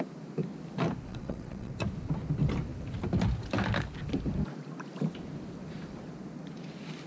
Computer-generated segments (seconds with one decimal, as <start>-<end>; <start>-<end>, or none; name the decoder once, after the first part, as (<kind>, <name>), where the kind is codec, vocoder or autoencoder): 1.1-1.7 (vocoder, WaveNeXt)